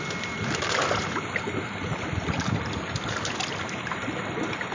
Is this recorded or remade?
recorded